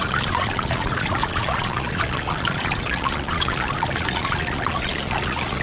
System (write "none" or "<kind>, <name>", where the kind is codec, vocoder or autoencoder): vocoder, Vocos